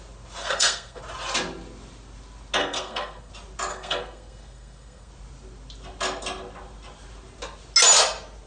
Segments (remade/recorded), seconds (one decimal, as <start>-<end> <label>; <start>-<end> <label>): 0.0-0.4 recorded; 0.4-1.0 remade; 1.0-2.6 recorded; 2.6-3.3 remade; 3.3-3.7 recorded; 3.7-5.1 remade; 5.1-8.5 recorded